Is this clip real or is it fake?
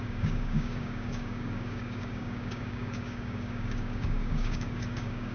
fake